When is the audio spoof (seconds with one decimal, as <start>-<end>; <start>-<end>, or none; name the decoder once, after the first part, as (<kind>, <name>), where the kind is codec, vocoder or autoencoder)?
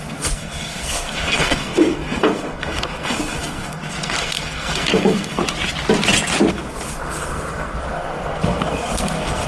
0.0-5.4 (codec, SNAC); 6.5-9.5